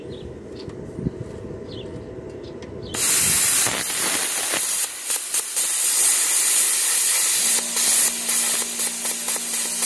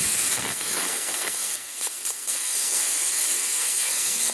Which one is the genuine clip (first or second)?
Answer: first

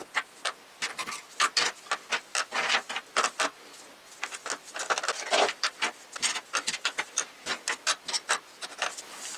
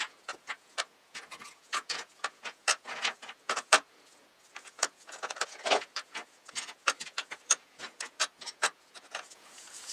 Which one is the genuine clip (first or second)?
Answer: first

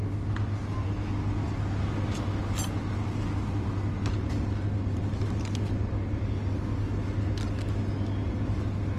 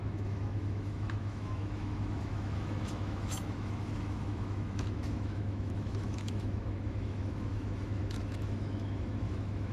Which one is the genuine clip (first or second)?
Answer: first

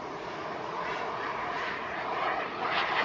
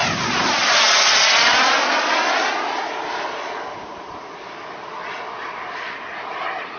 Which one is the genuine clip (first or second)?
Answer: second